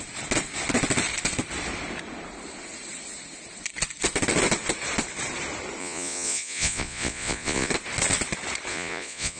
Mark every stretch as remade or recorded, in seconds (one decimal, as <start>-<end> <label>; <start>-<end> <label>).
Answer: 0.0-5.8 recorded; 5.8-7.7 remade; 7.7-8.7 recorded; 8.7-9.4 remade